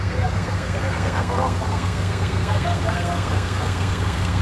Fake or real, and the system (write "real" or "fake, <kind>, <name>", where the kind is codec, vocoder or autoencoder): fake, codec, SNAC